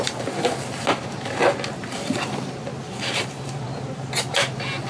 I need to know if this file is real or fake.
real